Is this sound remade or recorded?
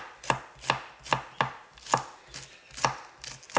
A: recorded